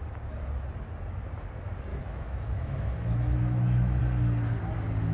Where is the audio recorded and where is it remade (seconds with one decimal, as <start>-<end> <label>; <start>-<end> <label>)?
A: 0.0-1.9 recorded; 1.9-4.0 remade; 4.0-5.1 recorded